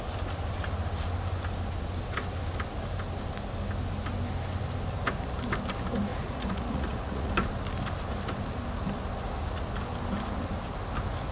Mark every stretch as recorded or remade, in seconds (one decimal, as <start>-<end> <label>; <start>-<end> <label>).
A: 0.0-6.1 recorded; 6.1-7.3 remade; 7.3-11.3 recorded